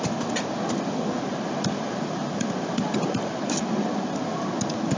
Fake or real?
real